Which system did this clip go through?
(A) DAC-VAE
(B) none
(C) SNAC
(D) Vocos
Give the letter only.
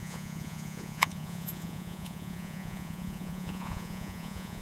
D